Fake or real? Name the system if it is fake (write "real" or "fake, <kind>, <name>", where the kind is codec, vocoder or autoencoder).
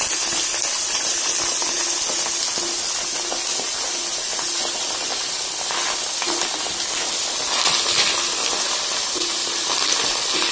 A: real